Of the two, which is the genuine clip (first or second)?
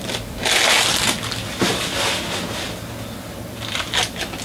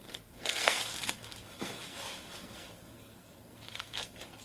first